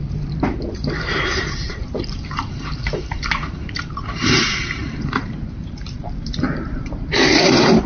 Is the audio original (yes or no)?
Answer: no